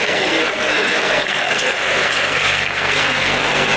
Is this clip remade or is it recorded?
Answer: remade